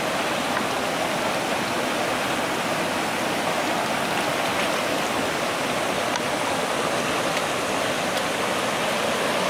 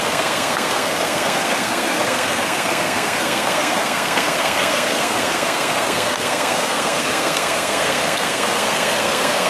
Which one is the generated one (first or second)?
second